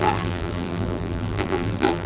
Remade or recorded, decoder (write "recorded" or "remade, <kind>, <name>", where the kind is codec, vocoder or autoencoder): remade, vocoder, BigVGAN v2